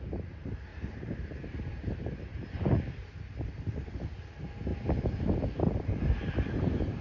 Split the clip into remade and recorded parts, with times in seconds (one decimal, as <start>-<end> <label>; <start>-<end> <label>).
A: 0.0-0.7 recorded; 0.7-3.9 remade; 3.9-4.7 recorded; 4.7-5.8 remade; 5.8-7.0 recorded